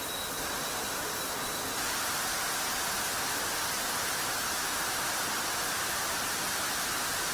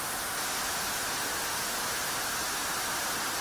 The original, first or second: second